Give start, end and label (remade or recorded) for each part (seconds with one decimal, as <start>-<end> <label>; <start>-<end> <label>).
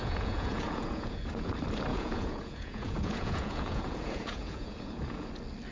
0.0-1.5 remade; 1.5-1.9 recorded; 1.9-5.3 remade; 5.3-5.7 recorded